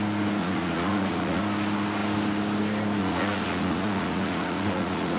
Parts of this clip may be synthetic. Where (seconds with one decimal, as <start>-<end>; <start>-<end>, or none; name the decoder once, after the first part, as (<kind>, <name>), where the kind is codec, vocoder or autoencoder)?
0.4-1.4 (vocoder, Vocos); 3.0-5.2